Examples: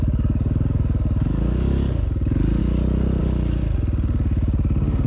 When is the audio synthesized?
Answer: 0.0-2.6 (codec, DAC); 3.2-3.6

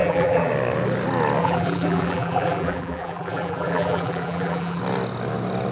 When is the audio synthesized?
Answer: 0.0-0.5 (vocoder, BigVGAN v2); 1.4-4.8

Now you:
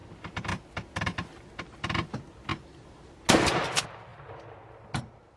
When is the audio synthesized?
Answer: 2.5-3.2 (vocoder, BigVGAN v2)

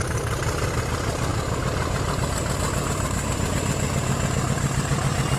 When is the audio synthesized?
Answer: none

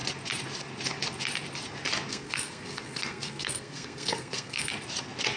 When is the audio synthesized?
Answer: 2.1-4.7 (codec, SNAC)

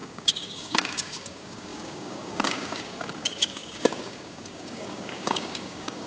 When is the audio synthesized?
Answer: 0.0-6.1 (codec, DAC)

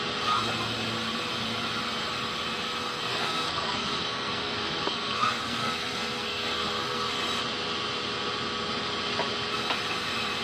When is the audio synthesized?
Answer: 3.0-7.2 (codec, SNAC)